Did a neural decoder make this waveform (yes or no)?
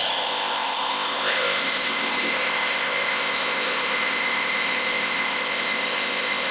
yes